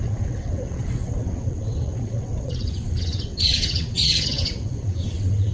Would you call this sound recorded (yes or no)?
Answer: no